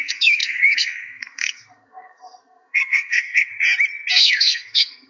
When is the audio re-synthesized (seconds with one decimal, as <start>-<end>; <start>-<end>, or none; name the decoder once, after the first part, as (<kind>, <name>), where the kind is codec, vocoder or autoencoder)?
0.0-3.5 (codec, SNAC); 4.1-5.1

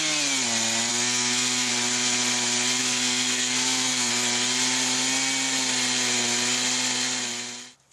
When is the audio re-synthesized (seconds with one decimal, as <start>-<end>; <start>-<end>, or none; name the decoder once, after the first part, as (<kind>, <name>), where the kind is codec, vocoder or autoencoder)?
0.9-1.7 (codec, SNAC); 2.8-4.1

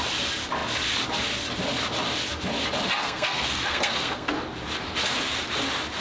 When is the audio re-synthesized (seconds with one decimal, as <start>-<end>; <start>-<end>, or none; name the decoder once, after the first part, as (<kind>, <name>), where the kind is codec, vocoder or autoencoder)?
3.0-4.3 (codec, SNAC)

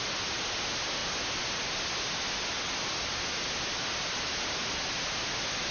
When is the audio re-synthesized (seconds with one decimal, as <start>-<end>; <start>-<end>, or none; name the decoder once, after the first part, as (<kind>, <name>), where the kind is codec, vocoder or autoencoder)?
none

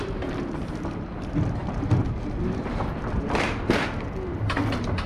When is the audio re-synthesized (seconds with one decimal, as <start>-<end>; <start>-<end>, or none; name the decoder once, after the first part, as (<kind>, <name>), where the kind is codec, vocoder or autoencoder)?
none

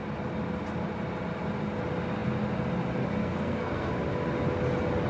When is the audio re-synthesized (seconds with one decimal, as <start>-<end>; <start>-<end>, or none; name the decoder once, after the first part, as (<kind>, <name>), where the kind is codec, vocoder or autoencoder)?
3.2-3.9 (codec, SNAC)